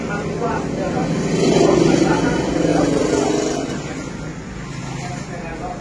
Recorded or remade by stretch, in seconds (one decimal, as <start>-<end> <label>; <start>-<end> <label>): 0.0-5.8 recorded